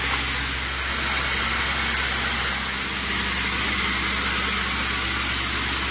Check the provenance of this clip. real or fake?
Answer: real